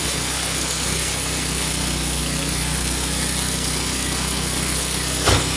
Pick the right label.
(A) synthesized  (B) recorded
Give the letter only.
A